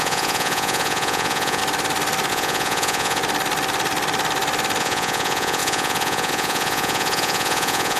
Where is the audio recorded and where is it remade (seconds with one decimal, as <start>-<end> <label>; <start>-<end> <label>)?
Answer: 0.0-1.6 remade; 1.6-2.3 recorded; 2.3-3.2 remade; 3.2-4.8 recorded; 4.8-8.0 remade